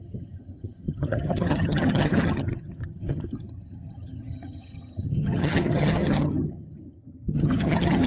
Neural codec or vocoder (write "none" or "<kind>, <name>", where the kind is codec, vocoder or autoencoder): vocoder, HiFi-GAN